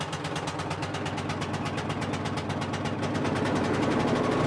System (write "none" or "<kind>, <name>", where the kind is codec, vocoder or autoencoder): none